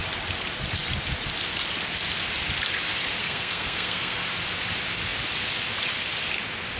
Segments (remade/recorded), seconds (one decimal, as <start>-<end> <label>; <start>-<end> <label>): 0.0-3.2 recorded; 3.2-4.3 remade; 4.3-6.8 recorded